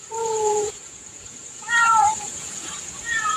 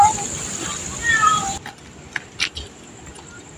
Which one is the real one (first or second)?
second